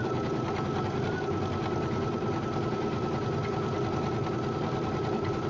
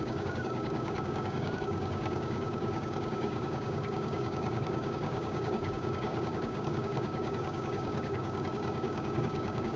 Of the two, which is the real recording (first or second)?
first